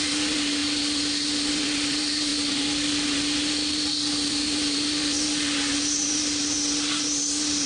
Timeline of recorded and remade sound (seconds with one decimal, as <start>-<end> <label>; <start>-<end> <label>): 0.0-7.7 remade